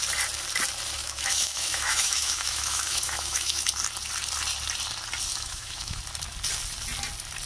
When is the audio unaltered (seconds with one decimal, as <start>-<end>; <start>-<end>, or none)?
0.0-1.0; 3.6-5.3; 6.0-7.5